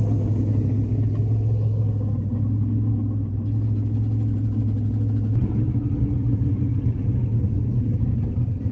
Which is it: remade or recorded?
recorded